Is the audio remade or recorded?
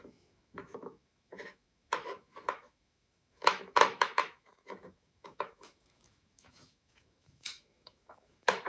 remade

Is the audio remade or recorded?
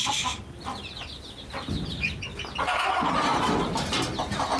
recorded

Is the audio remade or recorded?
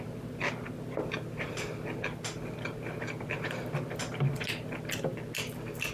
recorded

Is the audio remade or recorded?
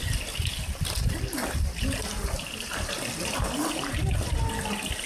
recorded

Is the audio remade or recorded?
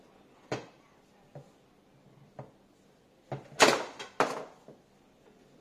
recorded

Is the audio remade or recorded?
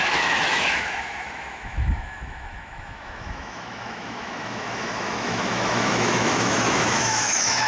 remade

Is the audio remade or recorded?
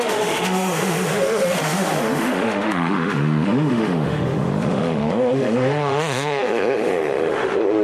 remade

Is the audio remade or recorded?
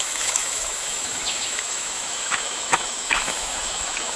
remade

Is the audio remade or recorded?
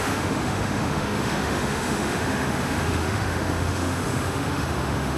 remade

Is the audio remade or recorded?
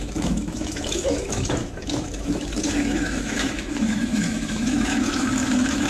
remade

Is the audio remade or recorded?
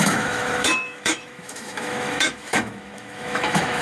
remade